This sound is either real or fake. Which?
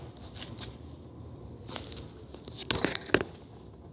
real